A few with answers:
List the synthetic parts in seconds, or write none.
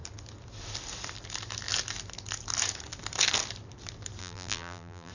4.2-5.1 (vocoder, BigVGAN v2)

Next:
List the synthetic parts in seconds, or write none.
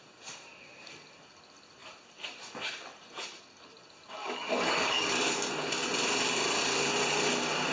4.2-5.5 (codec, DAC)